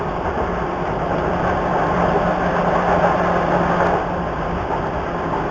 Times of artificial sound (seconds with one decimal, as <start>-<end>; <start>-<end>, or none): none